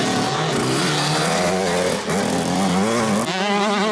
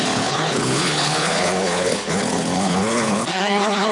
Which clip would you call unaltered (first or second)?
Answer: first